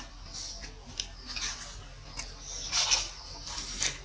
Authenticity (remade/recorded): recorded